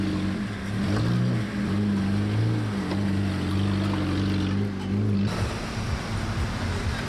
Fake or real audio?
real